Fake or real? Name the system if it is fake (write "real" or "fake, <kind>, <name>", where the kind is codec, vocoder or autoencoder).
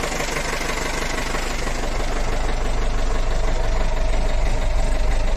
real